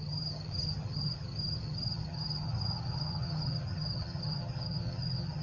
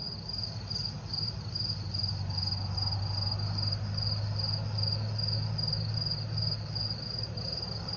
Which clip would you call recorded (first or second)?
second